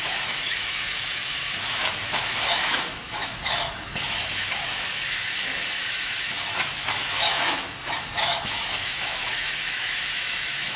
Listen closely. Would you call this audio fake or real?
fake